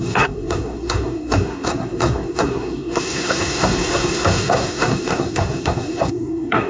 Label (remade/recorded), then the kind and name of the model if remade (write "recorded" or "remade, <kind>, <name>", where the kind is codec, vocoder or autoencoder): remade, codec, SNAC